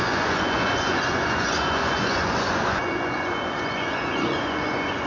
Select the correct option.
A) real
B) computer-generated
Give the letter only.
B